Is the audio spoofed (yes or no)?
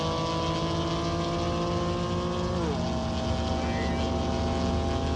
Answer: no